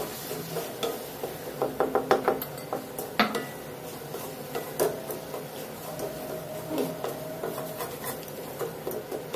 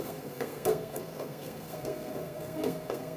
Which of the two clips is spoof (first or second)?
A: second